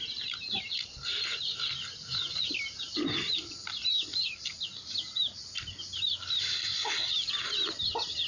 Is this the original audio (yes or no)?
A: yes